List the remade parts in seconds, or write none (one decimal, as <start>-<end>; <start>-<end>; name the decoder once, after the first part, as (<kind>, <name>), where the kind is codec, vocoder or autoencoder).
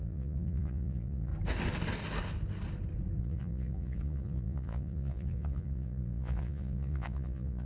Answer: 0.0-1.3 (vocoder, Vocos); 3.2-7.7